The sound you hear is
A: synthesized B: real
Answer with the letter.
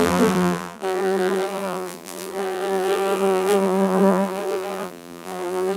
A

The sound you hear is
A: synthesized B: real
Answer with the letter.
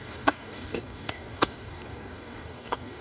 A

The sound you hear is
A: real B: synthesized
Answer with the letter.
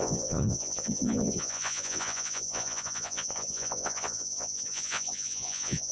B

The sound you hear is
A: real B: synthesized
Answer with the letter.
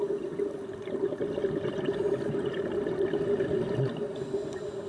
A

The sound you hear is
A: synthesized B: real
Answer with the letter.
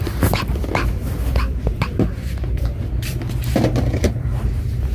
A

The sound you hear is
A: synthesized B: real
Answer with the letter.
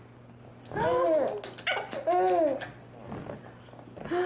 B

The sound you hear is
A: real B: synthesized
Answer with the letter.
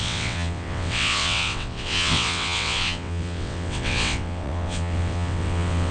B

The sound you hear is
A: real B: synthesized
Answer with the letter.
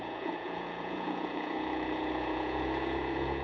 B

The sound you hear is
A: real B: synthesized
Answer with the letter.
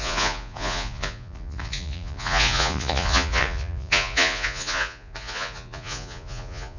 B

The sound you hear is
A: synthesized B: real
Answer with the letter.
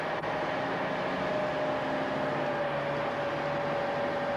B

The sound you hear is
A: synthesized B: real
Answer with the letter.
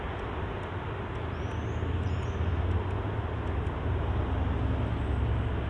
B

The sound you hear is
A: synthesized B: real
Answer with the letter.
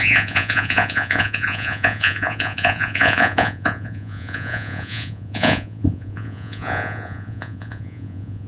A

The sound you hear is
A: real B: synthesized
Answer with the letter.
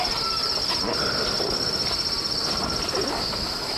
A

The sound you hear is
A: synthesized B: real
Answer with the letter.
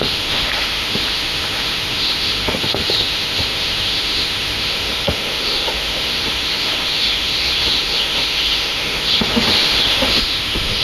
A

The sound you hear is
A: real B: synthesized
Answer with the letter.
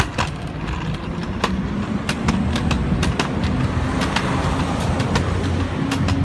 A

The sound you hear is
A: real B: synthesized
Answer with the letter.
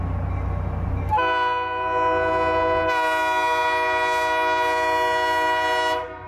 A